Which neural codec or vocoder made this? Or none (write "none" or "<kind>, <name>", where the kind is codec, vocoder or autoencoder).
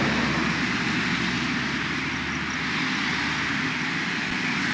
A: none